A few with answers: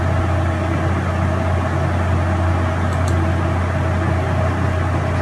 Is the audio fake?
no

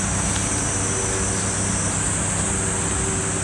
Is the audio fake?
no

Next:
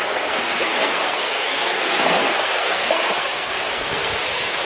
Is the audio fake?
yes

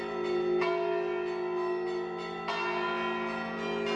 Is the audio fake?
no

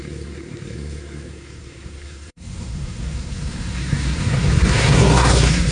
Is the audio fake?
yes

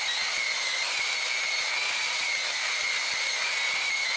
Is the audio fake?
no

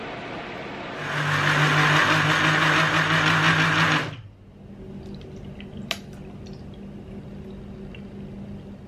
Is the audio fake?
no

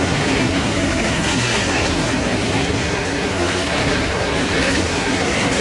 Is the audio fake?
yes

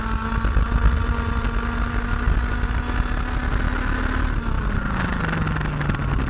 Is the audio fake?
no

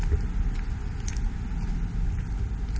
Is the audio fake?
no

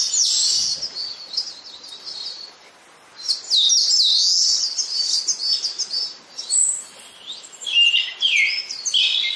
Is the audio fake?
no